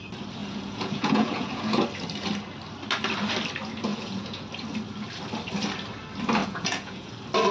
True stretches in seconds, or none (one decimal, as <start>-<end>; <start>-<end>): 0.0-0.4; 1.6-3.9; 4.5-6.4; 7.1-7.5